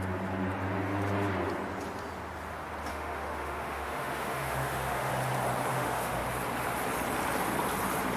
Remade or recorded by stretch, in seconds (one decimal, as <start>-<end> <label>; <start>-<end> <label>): 0.0-2.9 recorded; 2.9-5.1 remade; 5.1-5.7 recorded; 5.7-6.2 remade; 6.2-8.2 recorded